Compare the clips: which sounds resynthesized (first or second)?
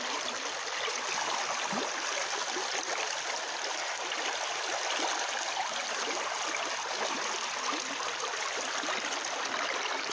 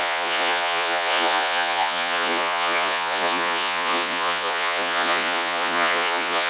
second